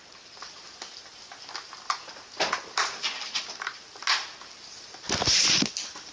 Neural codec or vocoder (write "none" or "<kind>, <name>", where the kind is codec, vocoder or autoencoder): none